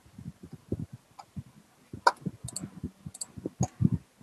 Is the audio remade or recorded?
recorded